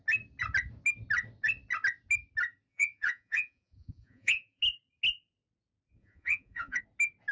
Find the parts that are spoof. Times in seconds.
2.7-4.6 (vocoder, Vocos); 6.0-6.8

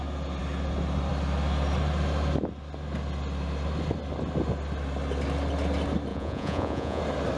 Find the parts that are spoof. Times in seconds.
6.1-7.0 (vocoder, Vocos)

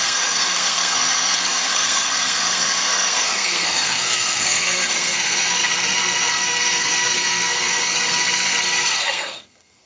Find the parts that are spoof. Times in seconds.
0.0-9.9 (codec, SNAC)

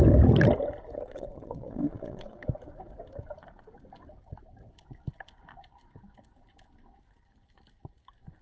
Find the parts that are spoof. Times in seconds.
1.1-2.4 (vocoder, Vocos)